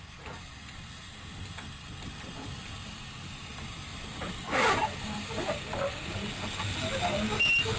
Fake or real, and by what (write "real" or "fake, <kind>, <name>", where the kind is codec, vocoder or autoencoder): real